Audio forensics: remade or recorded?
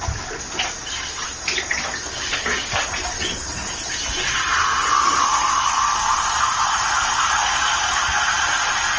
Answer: recorded